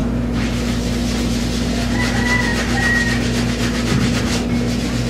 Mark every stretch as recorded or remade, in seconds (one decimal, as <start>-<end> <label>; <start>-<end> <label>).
0.0-1.4 remade; 1.4-2.5 recorded; 2.5-4.2 remade; 4.2-5.1 recorded